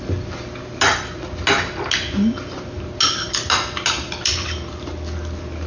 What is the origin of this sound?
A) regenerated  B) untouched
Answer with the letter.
B